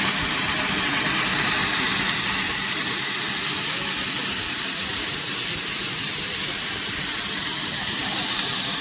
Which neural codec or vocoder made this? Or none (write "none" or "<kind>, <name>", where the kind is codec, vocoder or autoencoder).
none